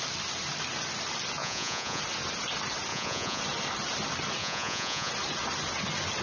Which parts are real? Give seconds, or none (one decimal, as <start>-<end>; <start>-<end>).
0.0-1.4; 2.0-2.9; 3.4-4.4; 5.1-6.2